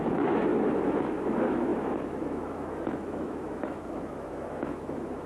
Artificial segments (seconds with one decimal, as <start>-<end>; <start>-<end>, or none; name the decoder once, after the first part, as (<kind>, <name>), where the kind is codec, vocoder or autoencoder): 0.0-0.5 (autoencoder, DAC-VAE); 1.0-5.3